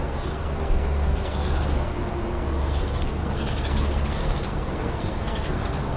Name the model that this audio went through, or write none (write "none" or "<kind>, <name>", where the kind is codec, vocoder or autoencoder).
codec, SNAC